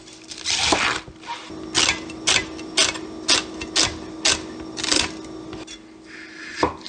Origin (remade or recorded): recorded